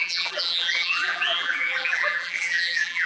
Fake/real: fake